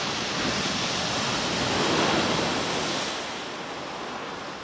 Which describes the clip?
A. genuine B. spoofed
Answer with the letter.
A